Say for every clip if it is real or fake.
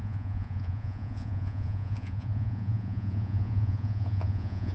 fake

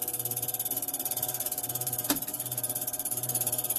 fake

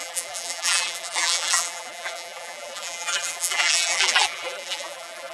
fake